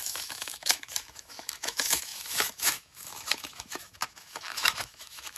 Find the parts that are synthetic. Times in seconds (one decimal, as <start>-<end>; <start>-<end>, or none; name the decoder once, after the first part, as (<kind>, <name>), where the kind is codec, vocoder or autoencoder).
0.0-5.4 (autoencoder, DAC-VAE)